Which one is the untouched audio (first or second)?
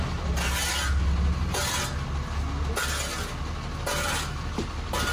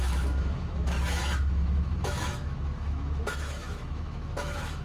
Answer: first